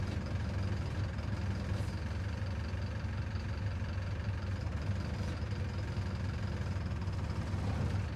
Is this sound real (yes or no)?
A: yes